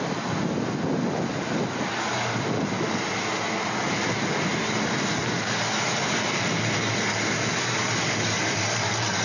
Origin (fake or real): real